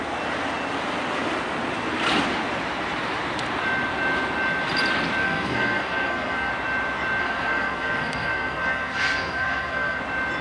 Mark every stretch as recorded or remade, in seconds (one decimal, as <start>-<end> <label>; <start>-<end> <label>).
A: 0.0-5.2 recorded; 5.2-6.5 remade; 6.5-7.2 recorded; 7.2-10.0 remade; 10.0-10.4 recorded